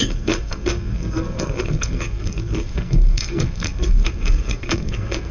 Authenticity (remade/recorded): remade